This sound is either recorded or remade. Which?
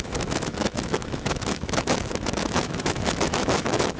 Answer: remade